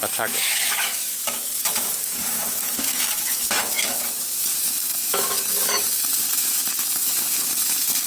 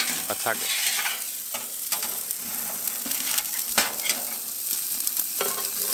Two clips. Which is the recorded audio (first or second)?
second